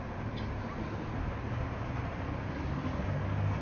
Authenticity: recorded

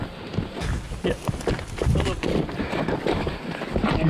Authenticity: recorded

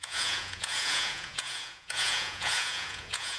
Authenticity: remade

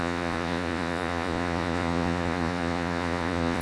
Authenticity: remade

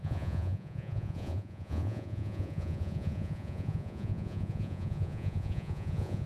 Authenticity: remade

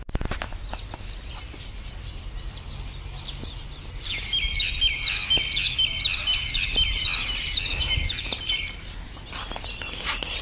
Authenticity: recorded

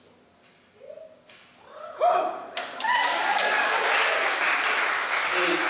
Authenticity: recorded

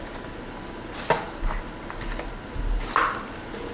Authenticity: recorded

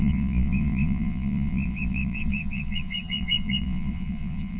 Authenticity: remade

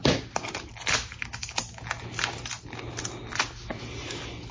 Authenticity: recorded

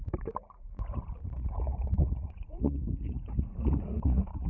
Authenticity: remade